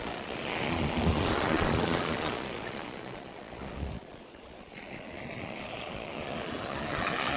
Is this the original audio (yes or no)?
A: no